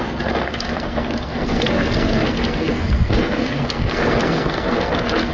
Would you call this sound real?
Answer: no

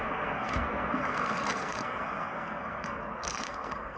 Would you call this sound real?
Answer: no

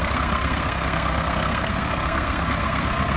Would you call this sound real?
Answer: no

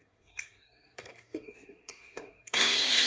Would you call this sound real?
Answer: no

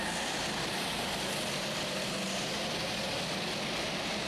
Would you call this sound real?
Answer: yes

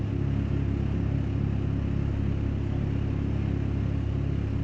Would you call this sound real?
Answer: yes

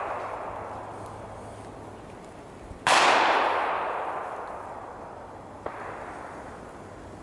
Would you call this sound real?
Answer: yes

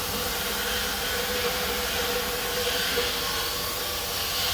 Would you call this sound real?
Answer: yes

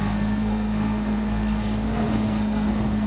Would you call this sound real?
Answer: no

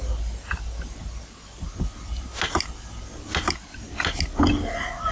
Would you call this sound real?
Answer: yes